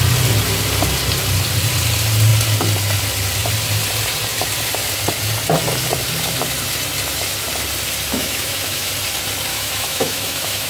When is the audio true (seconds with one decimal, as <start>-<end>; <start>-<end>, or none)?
0.0-8.1; 8.9-9.5